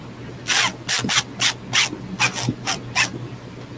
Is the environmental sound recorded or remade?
recorded